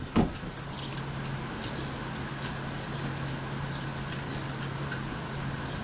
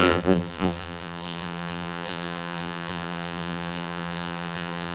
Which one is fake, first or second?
second